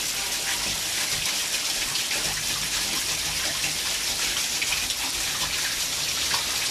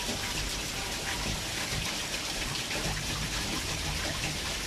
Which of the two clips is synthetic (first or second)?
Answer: second